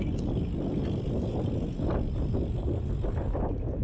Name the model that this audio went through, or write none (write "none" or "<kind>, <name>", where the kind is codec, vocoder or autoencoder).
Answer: none